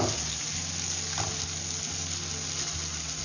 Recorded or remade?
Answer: recorded